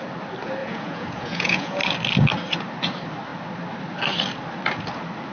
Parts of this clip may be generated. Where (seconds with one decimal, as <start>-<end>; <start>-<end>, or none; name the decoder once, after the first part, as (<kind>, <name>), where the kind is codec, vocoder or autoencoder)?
0.6-1.8 (vocoder, Vocos)